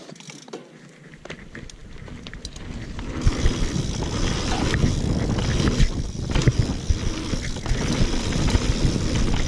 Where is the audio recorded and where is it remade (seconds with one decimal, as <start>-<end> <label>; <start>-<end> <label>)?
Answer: 0.0-9.5 recorded